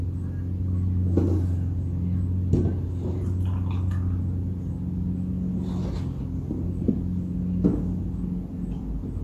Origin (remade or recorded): recorded